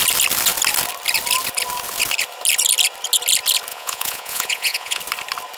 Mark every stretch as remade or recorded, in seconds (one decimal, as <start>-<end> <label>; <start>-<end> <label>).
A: 0.0-3.7 recorded; 3.7-5.0 remade; 5.0-5.6 recorded